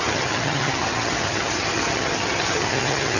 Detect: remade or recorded remade